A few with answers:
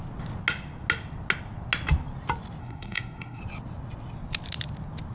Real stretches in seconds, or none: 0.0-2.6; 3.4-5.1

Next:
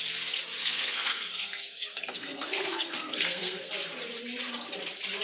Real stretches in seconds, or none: 0.0-0.6; 3.7-5.2

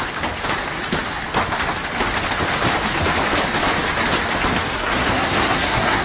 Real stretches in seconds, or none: 0.0-4.7

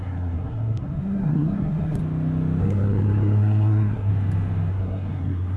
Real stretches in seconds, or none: 2.0-2.6; 4.1-4.7